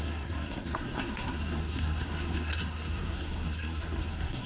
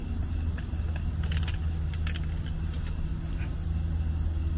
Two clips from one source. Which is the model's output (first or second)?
first